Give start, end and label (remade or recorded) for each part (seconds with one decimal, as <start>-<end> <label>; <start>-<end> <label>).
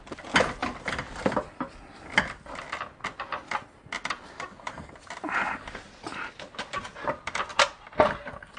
0.0-8.6 recorded